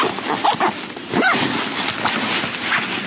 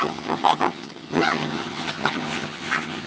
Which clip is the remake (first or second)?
second